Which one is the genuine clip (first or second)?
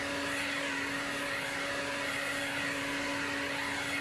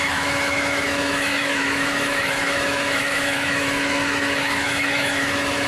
first